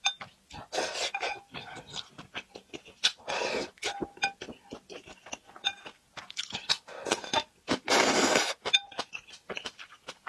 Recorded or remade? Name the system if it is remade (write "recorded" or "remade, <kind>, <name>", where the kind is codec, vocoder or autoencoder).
recorded